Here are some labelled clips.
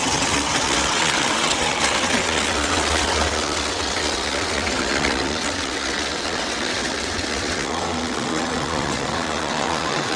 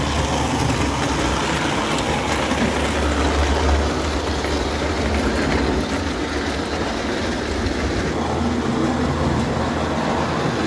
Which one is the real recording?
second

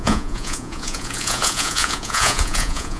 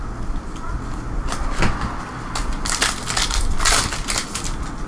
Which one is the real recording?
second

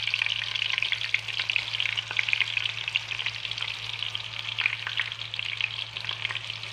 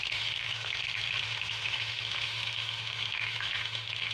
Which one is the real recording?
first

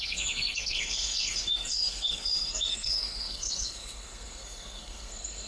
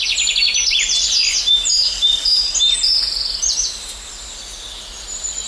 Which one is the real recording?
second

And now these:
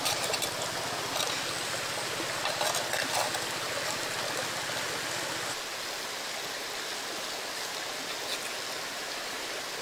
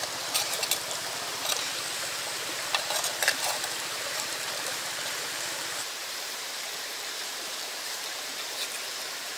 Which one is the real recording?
first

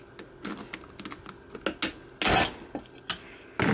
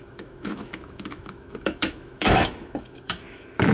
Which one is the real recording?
first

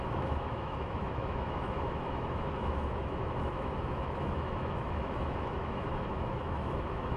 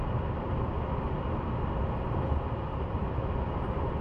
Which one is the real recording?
second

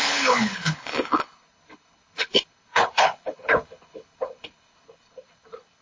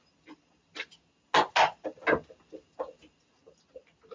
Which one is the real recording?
second